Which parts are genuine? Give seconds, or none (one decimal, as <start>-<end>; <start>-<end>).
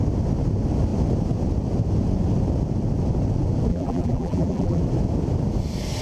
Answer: 0.0-3.7; 4.8-6.0